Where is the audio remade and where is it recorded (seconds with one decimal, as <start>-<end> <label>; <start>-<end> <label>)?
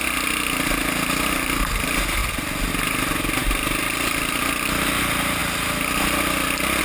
0.0-3.4 recorded; 3.4-5.0 remade; 5.0-6.8 recorded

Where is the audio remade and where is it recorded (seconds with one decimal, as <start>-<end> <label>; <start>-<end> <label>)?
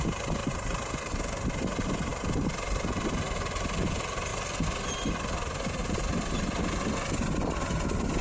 0.0-0.4 recorded; 0.4-1.1 remade; 1.1-5.8 recorded; 5.8-6.5 remade; 6.5-8.2 recorded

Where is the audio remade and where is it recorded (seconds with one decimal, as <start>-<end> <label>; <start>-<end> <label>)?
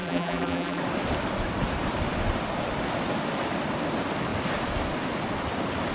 0.0-0.8 remade; 0.8-5.9 recorded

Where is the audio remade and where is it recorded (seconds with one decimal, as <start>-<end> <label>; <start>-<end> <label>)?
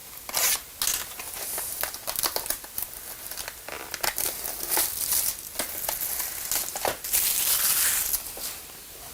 0.0-9.1 recorded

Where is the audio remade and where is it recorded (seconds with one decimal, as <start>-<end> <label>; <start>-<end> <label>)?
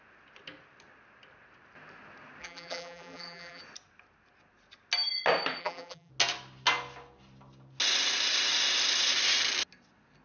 0.0-2.4 recorded; 2.4-3.6 remade; 3.6-5.6 recorded; 5.6-6.1 remade; 6.1-10.2 recorded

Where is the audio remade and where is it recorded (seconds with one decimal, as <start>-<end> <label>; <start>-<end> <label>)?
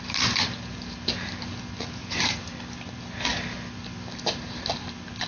0.0-2.0 recorded; 2.0-2.5 remade; 2.5-5.3 recorded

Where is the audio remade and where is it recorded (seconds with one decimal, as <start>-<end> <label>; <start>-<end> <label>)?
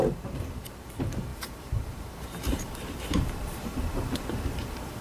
0.0-5.0 remade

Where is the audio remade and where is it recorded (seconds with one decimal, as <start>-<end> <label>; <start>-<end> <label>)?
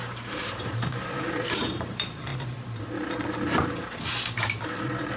0.0-2.3 remade; 2.3-4.8 recorded; 4.8-5.2 remade